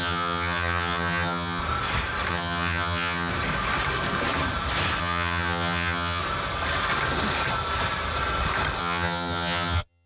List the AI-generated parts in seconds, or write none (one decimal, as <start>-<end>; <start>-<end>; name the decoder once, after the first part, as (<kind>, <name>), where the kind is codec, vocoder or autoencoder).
0.0-1.6 (vocoder, HiFi-GAN); 2.3-3.3; 5.0-6.2; 8.8-10.1